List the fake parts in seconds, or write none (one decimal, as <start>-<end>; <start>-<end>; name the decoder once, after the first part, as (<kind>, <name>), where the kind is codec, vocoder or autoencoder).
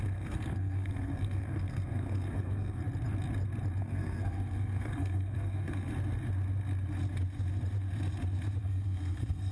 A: 0.0-2.8 (codec, SNAC); 3.8-5.9; 8.6-9.5